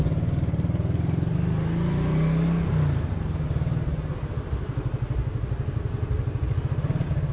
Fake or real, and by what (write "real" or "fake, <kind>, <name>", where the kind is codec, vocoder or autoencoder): real